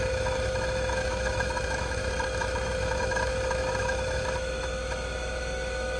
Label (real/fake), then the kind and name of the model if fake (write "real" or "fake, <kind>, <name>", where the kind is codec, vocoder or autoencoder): fake, autoencoder, DAC-VAE